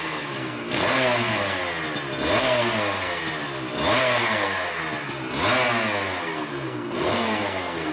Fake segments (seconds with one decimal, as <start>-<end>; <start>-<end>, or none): 0.0-1.6; 2.4-3.2; 4.0-4.8; 6.2-7.9